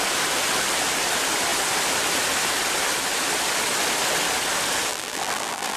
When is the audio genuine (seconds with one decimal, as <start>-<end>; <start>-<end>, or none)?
0.0-4.9